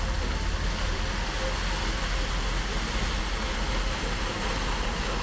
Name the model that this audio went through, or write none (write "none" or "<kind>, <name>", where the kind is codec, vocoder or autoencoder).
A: none